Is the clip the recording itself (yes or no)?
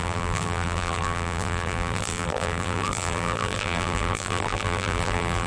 no